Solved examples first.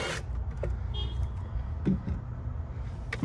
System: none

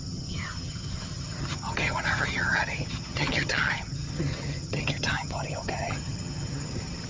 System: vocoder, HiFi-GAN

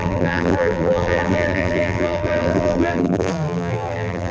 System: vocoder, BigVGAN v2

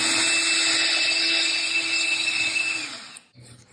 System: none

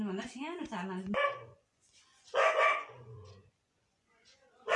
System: vocoder, Vocos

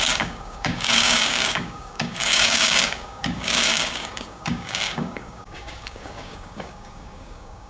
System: codec, DAC